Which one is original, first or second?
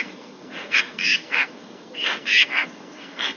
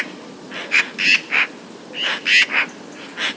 second